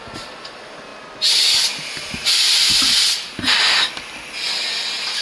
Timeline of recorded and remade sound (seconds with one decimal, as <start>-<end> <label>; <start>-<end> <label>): 0.0-5.2 recorded